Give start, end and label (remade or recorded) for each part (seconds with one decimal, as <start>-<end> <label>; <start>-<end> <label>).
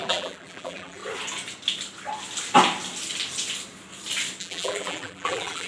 0.0-1.0 remade; 1.0-4.4 recorded; 4.4-5.7 remade